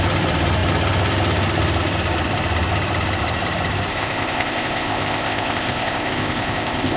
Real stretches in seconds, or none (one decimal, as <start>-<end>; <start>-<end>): 0.0-3.9